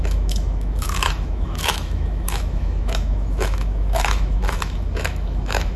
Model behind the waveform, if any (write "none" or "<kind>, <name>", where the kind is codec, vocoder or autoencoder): autoencoder, DAC-VAE